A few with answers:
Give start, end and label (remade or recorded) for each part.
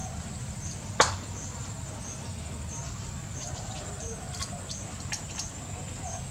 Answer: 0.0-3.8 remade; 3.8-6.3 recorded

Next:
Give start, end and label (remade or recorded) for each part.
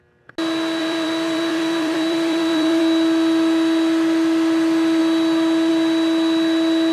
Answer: 0.0-0.8 recorded; 0.8-2.8 remade; 2.8-6.9 recorded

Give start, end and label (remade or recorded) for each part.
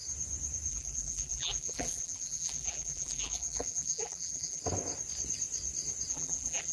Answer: 0.0-0.7 recorded; 0.7-4.6 remade; 4.6-6.1 recorded; 6.1-6.7 remade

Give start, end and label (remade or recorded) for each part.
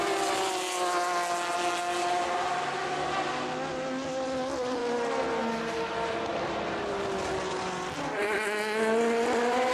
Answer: 0.0-9.7 recorded